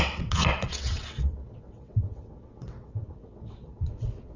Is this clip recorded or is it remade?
remade